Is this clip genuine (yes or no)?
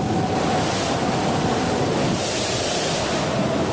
yes